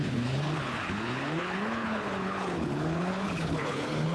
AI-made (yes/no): yes